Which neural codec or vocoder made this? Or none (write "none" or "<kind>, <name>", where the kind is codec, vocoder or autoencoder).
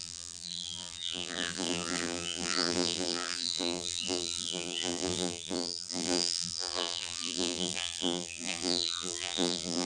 vocoder, BigVGAN v2